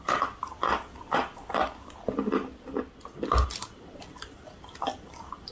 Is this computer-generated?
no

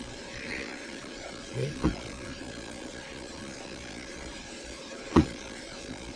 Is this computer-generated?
yes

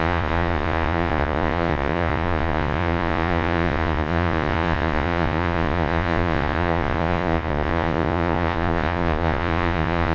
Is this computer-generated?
yes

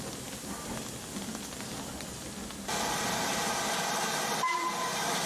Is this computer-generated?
no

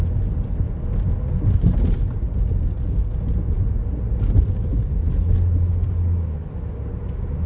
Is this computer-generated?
no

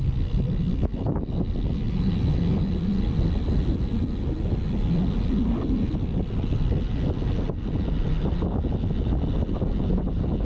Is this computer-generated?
no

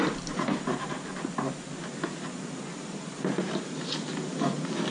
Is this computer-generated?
no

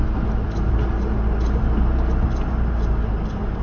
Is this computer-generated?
no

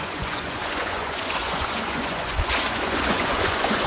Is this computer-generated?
yes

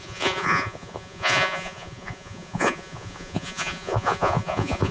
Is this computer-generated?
yes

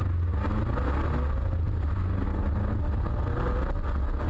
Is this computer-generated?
no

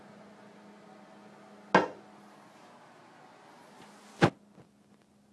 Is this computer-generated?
no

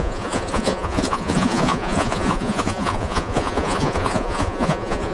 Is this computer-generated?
yes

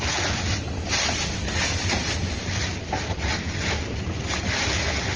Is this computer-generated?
no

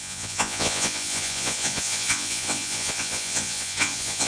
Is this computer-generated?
yes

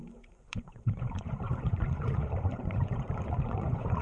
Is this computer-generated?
yes